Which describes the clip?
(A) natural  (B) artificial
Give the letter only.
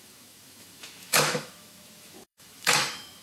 B